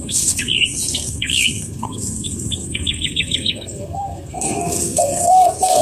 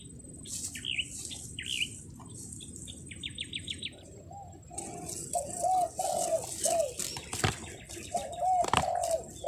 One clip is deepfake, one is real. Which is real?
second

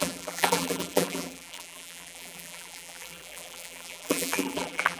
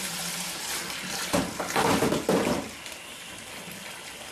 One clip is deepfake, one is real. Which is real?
second